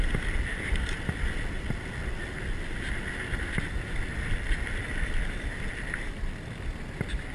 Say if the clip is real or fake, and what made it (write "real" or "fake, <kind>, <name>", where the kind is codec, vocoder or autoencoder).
real